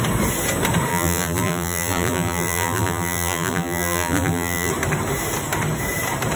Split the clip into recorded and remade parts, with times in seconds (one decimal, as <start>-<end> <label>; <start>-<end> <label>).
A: 0.0-0.9 recorded; 0.9-4.7 remade; 4.7-6.4 recorded